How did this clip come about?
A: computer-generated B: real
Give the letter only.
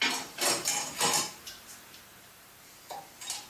A